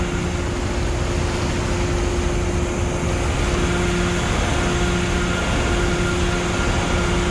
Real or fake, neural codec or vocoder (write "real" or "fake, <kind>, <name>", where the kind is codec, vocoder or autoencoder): real